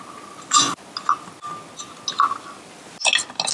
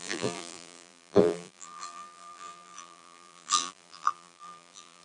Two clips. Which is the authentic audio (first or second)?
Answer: first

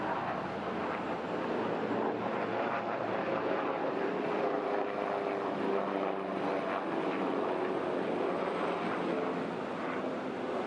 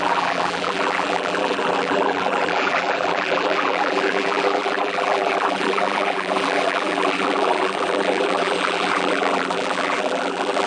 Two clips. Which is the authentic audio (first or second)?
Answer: first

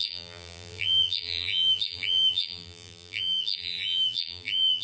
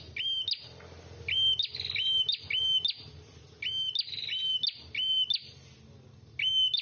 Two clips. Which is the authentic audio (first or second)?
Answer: second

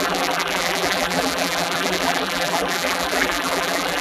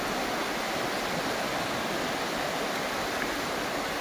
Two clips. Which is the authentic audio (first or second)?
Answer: second